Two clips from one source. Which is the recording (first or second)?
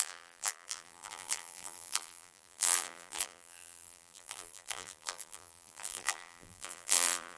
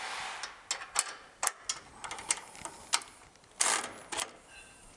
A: second